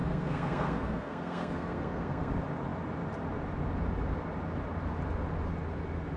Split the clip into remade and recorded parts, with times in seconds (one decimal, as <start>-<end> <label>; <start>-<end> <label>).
0.0-2.3 remade; 2.3-6.2 recorded